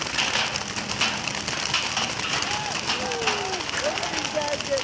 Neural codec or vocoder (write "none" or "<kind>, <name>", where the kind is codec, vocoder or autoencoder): none